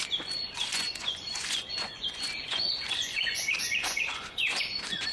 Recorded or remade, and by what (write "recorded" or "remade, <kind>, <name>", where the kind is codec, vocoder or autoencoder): remade, vocoder, Vocos